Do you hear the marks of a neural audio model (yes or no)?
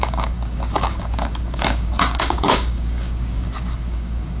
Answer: yes